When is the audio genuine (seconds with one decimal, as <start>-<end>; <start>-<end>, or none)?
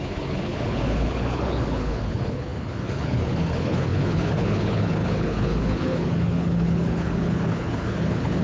none